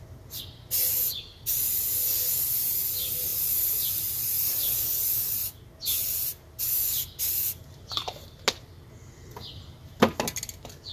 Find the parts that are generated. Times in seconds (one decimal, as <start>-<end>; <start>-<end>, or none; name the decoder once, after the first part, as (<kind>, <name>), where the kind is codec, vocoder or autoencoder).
none